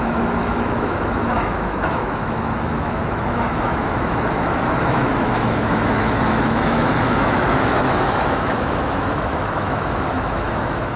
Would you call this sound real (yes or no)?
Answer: no